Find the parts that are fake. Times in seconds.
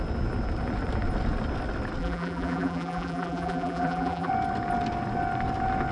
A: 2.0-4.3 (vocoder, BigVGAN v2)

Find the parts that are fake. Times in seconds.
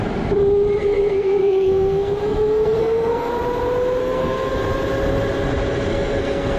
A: 0.8-3.3 (codec, SNAC); 4.0-4.5; 5.9-6.6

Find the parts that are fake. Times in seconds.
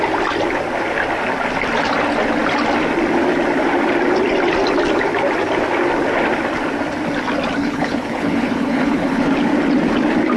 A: 7.6-9.3 (codec, HILCodec)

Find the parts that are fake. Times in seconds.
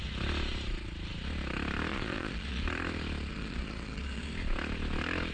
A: 1.9-2.6 (vocoder, Vocos); 3.3-4.3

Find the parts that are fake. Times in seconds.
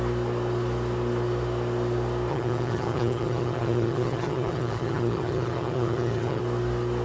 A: 2.3-6.4 (vocoder, HiFi-GAN)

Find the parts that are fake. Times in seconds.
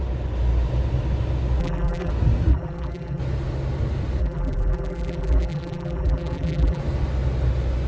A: 1.6-2.1 (vocoder, BigVGAN v2); 2.5-3.2; 4.2-6.8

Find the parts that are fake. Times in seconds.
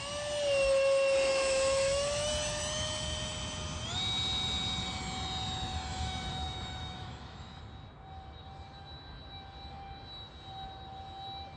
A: 1.3-2.3 (autoencoder, DAC-VAE); 5.9-7.6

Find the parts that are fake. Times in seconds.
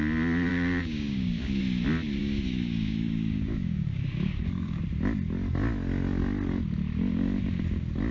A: 0.5-1.6 (codec, DAC); 2.2-4.8